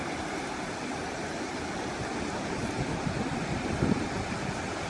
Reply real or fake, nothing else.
real